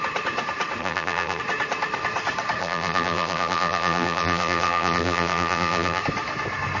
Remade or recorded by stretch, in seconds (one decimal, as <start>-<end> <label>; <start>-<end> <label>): 0.0-0.8 recorded; 0.8-1.4 remade; 1.4-2.6 recorded; 2.6-6.0 remade; 6.0-6.8 recorded